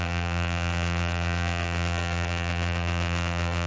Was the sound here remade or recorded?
remade